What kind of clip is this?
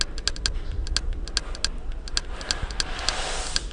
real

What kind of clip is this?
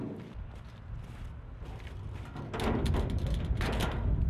real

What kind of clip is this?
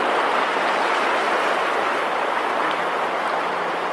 real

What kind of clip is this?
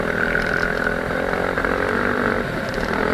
fake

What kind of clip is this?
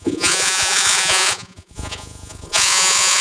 fake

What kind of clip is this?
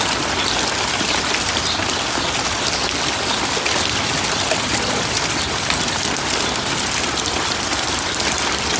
real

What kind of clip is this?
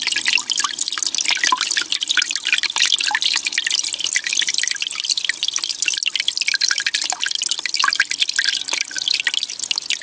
real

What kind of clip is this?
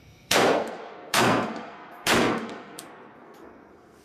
fake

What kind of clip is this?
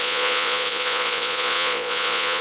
fake